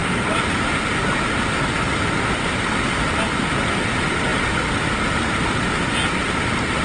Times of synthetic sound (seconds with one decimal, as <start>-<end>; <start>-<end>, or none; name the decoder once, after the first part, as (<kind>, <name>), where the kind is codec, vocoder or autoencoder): none